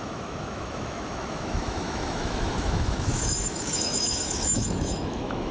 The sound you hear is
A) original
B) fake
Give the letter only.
B